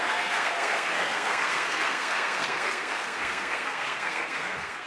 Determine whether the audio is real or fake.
fake